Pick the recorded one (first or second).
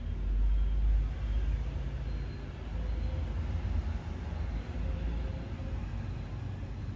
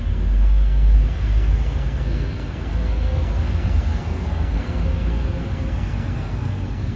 first